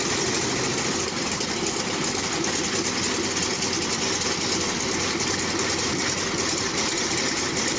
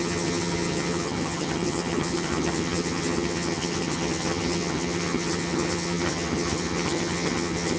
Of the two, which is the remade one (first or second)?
second